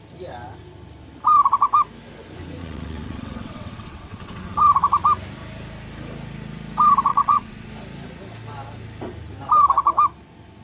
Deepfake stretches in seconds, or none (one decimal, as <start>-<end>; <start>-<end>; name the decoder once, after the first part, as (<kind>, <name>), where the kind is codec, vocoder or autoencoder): 2.6-4.6 (vocoder, WaveNeXt); 7.1-7.7